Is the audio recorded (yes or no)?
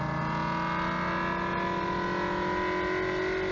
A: yes